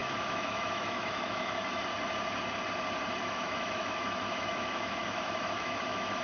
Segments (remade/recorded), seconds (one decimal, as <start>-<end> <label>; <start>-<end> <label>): 0.0-1.6 remade; 1.6-3.2 recorded; 3.2-6.2 remade